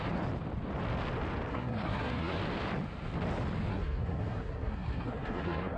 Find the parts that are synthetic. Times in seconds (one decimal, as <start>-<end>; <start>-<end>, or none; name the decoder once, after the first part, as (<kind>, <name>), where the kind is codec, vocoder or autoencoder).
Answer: 1.5-2.4 (codec, SNAC); 3.7-5.8